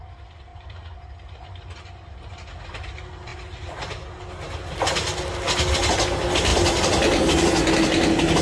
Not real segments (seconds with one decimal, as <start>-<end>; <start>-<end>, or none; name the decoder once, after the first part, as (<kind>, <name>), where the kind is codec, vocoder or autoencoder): 0.5-1.1 (vocoder, BigVGAN v2)